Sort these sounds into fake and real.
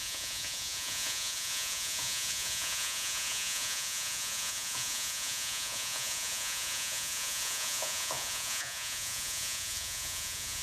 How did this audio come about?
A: fake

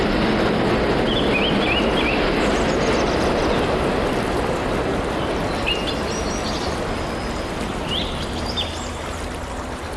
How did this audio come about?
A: real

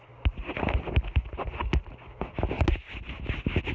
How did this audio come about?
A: real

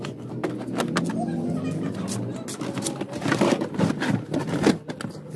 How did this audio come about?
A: real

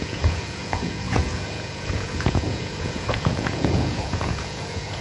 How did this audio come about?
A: fake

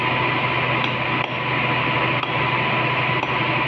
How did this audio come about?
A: real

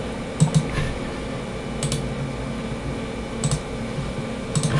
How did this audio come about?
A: real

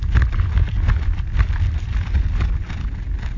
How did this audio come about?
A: real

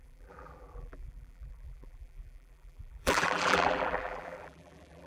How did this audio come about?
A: fake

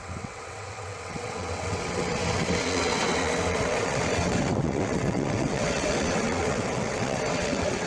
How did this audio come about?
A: fake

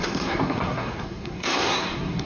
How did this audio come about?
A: fake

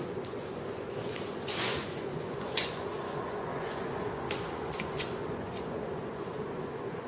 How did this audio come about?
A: fake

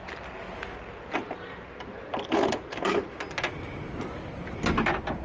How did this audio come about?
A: real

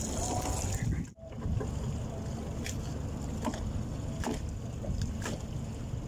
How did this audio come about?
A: real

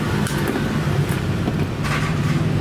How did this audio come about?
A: real